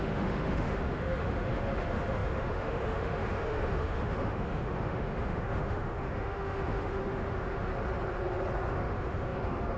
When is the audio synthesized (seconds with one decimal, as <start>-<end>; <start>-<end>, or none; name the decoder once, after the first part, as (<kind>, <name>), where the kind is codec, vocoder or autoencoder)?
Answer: 0.0-7.7 (autoencoder, DAC-VAE); 8.7-9.8